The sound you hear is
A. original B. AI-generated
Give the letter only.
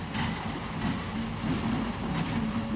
A